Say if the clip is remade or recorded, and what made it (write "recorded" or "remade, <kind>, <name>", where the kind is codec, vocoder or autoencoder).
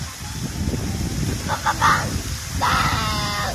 recorded